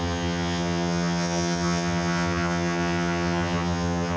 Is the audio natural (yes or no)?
no